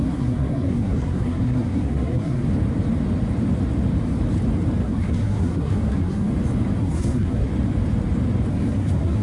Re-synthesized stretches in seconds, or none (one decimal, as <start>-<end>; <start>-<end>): 0.0-2.5; 4.8-6.3; 6.8-7.5; 8.5-9.2